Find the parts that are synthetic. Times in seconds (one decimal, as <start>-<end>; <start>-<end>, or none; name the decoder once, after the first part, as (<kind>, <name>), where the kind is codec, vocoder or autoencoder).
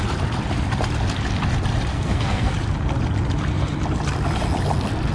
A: 1.9-2.5 (codec, SNAC)